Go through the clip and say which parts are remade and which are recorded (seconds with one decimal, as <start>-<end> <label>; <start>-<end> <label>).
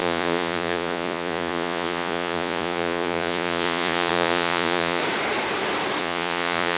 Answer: 0.0-5.0 remade; 5.0-6.0 recorded; 6.0-6.8 remade